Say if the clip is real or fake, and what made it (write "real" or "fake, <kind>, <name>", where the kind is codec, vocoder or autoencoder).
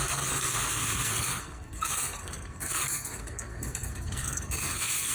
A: fake, codec, SNAC